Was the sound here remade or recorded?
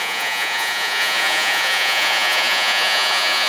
remade